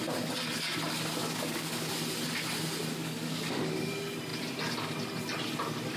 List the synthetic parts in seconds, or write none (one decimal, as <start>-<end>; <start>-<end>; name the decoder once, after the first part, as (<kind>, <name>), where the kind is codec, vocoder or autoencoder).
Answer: 1.2-1.9 (codec, DAC); 3.0-3.6